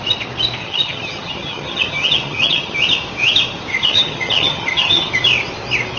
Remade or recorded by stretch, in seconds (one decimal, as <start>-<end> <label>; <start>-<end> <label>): 0.0-0.6 recorded; 0.6-2.8 remade; 2.8-3.7 recorded; 3.7-5.1 remade; 5.1-6.0 recorded